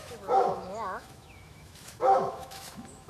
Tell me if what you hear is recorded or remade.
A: remade